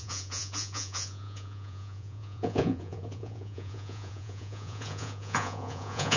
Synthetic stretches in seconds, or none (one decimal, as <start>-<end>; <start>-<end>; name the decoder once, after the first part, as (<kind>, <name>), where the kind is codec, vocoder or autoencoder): 0.0-6.2 (vocoder, Vocos)